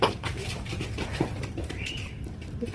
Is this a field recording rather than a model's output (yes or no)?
no